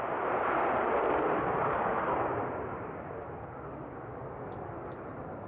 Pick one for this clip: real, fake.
fake